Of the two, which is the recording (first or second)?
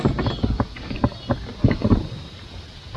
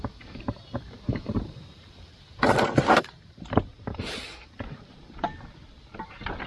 first